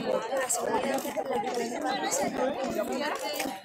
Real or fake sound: real